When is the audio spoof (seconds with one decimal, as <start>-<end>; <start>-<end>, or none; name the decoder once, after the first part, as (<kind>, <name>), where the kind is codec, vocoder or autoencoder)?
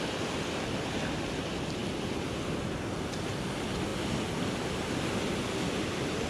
none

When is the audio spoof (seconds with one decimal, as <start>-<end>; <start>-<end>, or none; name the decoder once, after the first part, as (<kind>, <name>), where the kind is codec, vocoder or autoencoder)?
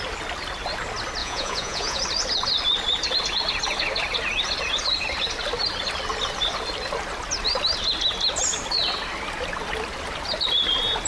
1.2-2.0 (vocoder, Vocos)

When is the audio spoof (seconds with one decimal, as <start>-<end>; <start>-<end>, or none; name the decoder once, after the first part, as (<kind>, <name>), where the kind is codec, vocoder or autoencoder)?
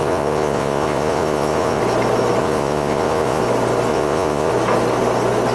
0.0-1.8 (vocoder, Vocos); 2.4-3.4; 3.9-4.5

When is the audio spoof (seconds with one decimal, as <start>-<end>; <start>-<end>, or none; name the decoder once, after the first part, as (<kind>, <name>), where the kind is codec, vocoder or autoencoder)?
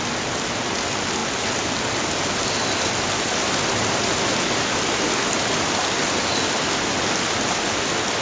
none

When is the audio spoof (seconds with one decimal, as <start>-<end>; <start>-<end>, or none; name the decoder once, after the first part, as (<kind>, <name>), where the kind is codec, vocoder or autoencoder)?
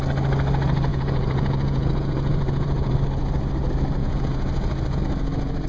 0.9-2.9 (vocoder, Vocos); 4.0-5.0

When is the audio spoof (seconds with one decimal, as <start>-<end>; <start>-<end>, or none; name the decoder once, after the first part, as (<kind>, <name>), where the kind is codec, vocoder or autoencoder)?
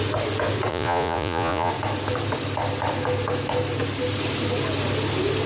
0.7-1.7 (vocoder, Vocos)